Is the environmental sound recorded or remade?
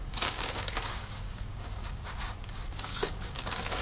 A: remade